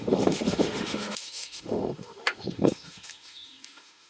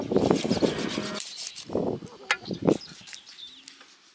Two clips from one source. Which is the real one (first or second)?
second